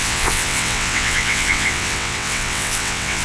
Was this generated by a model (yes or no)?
yes